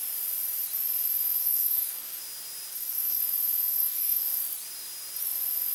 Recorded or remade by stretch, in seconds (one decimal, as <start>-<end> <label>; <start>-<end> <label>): 0.0-1.4 recorded; 1.4-2.2 remade; 2.2-2.7 recorded; 2.7-3.2 remade; 3.2-3.7 recorded; 3.7-4.4 remade; 4.4-5.7 recorded